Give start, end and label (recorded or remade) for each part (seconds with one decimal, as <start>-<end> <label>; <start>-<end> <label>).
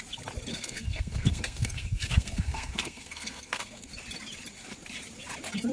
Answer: 0.0-0.5 recorded; 0.5-3.9 remade; 3.9-5.7 recorded